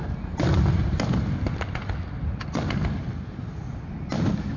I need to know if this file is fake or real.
real